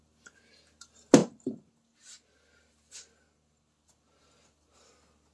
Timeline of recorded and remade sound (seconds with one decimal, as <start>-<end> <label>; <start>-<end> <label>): 0.0-5.3 recorded